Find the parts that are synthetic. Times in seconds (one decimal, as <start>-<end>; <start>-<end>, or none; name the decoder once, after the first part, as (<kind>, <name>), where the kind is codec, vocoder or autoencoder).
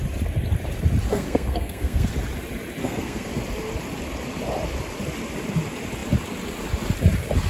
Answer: 1.1-2.1 (codec, SNAC); 2.8-3.3